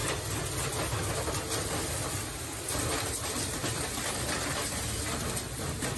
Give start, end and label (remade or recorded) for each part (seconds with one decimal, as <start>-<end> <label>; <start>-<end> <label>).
0.0-3.6 recorded; 3.6-4.4 remade; 4.4-6.0 recorded